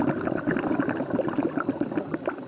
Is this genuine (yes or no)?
yes